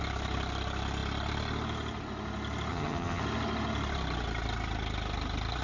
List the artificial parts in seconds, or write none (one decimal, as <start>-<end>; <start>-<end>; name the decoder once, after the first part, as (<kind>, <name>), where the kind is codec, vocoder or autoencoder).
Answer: 2.7-3.2 (vocoder, HiFi-GAN)